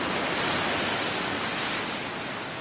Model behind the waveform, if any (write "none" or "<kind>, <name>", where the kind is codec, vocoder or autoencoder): none